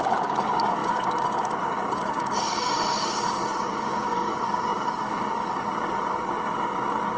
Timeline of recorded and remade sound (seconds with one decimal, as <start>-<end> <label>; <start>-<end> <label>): 0.0-7.2 remade